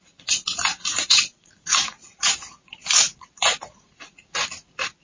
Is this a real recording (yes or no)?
no